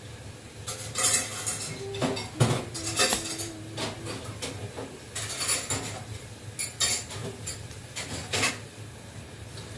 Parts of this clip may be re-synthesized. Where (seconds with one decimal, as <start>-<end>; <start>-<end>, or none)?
7.2-8.5